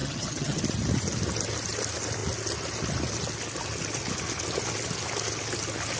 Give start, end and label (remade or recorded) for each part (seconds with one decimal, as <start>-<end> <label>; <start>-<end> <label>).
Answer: 0.0-0.6 remade; 0.6-6.0 recorded